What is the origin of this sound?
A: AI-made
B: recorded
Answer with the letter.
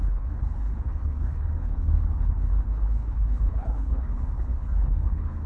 A